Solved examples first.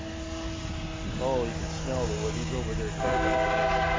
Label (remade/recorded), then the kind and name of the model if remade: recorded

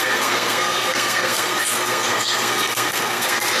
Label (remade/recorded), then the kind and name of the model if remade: remade, codec, SNAC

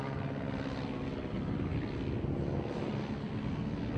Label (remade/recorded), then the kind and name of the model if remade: recorded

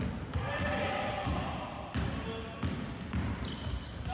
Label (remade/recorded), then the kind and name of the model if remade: recorded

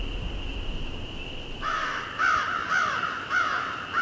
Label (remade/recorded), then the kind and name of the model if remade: recorded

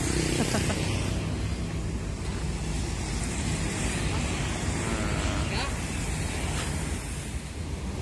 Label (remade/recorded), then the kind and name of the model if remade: recorded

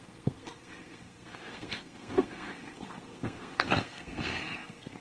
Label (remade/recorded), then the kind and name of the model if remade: remade, codec, SNAC